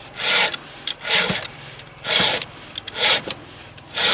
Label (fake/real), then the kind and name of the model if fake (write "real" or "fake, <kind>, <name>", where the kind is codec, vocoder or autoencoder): fake, vocoder, BigVGAN v2